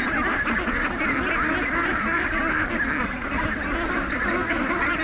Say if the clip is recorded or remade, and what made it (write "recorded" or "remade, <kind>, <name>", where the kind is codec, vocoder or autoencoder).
recorded